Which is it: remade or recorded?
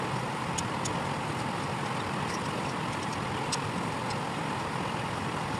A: recorded